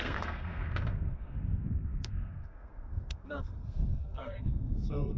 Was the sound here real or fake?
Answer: fake